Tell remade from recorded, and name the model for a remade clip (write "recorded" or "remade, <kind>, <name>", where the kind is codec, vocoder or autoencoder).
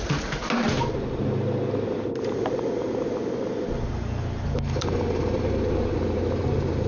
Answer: recorded